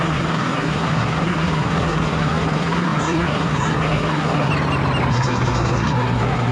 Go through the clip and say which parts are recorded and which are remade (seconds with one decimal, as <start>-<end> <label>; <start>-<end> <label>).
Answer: 0.0-4.5 remade; 4.5-5.1 recorded; 5.1-6.5 remade